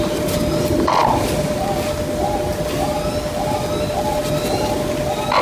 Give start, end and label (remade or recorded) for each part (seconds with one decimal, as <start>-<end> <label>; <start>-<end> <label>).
0.0-5.4 recorded

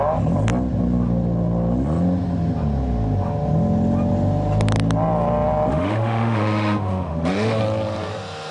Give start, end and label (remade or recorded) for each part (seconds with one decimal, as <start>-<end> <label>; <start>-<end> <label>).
0.0-5.7 recorded; 5.7-7.6 remade; 7.6-8.5 recorded